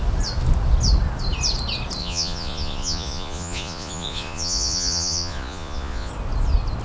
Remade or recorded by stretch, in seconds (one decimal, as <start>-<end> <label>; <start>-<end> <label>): 0.0-2.0 recorded; 2.0-6.1 remade; 6.1-6.8 recorded